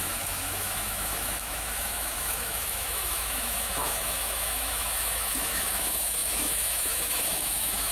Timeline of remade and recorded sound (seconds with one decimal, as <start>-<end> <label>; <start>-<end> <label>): 0.0-7.9 remade